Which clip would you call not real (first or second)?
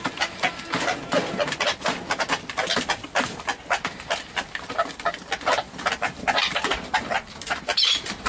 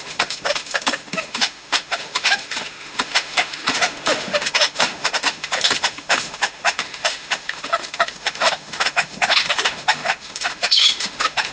second